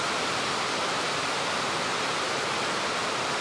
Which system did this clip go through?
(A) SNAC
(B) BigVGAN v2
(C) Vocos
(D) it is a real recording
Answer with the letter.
D